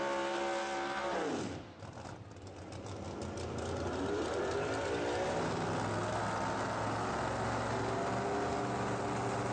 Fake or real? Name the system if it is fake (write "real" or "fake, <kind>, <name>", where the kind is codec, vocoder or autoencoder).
real